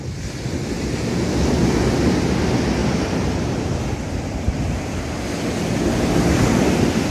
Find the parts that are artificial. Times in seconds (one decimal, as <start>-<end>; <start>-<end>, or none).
none